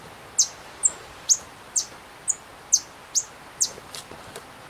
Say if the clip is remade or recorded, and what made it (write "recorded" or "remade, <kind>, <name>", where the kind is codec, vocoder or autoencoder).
recorded